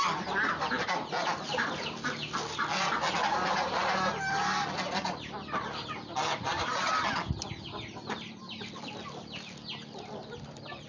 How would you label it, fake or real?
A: real